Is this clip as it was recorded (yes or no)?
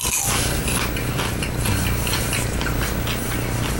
yes